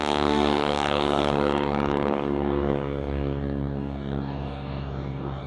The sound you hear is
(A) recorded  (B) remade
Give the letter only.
B